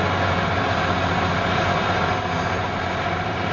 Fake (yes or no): no